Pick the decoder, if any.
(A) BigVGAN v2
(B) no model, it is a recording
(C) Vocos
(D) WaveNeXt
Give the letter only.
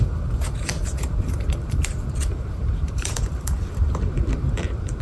A